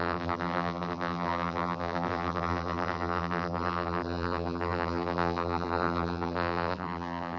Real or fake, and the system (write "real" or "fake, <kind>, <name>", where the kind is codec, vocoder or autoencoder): fake, vocoder, BigVGAN v2